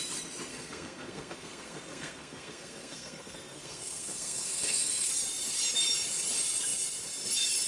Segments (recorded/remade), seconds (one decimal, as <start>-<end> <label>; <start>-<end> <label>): 0.0-0.5 recorded; 0.5-5.1 remade; 5.1-7.7 recorded